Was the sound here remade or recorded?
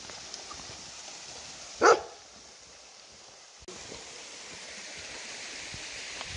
recorded